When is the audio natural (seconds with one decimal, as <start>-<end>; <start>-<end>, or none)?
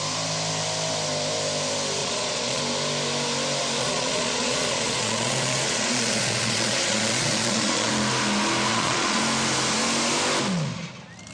0.0-2.0; 2.6-3.8; 7.9-8.7; 9.2-11.3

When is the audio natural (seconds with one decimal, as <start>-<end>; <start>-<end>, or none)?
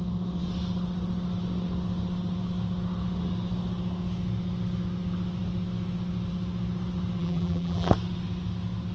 0.0-7.2; 7.9-8.9